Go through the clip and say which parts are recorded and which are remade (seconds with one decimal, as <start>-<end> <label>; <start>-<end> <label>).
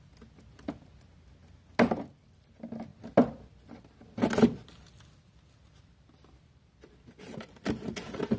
0.0-8.4 recorded